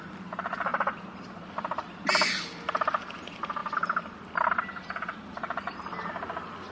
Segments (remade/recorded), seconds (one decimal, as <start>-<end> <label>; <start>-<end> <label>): 0.0-6.7 recorded